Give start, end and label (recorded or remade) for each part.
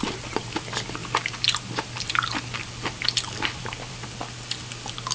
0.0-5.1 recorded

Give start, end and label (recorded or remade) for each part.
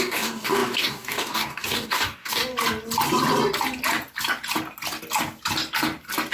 0.0-2.4 remade; 2.4-6.3 recorded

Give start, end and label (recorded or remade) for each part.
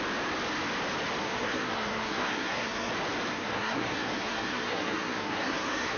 0.0-1.2 recorded; 1.2-2.9 remade; 2.9-3.3 recorded; 3.3-6.0 remade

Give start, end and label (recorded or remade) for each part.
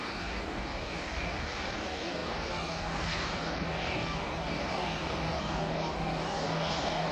0.0-7.1 remade